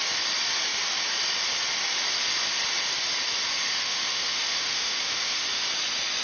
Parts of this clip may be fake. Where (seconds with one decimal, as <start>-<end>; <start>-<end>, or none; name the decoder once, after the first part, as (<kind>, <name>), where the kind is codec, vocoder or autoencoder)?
3.5-5.6 (autoencoder, DAC-VAE)